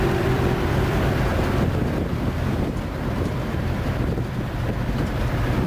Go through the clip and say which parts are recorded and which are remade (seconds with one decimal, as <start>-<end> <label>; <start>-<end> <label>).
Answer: 0.0-1.3 remade; 1.3-2.6 recorded; 2.6-5.7 remade